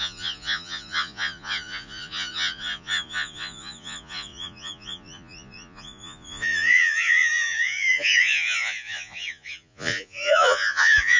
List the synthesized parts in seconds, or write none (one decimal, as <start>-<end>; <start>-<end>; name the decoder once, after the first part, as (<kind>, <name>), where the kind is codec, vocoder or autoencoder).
0.0-11.2 (vocoder, Vocos)